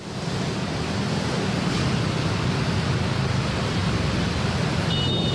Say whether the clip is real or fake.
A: fake